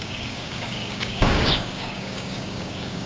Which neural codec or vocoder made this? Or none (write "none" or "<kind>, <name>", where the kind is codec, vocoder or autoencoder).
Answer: codec, DAC